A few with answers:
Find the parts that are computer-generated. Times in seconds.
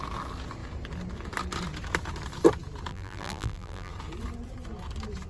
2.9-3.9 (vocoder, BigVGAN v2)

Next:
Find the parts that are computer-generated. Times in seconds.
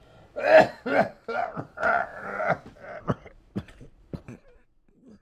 0.6-5.2 (vocoder, BigVGAN v2)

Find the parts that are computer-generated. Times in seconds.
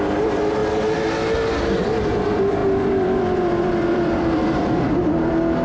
2.6-4.9 (vocoder, BigVGAN v2)